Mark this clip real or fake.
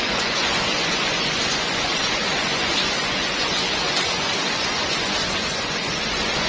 fake